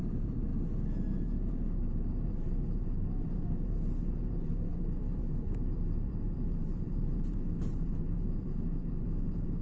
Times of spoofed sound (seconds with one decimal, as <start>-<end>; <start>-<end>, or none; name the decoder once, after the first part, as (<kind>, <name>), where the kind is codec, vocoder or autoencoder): 0.0-0.5 (vocoder, BigVGAN v2); 1.2-9.6